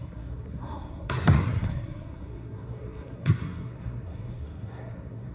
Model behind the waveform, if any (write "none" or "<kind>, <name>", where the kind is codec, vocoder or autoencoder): codec, SNAC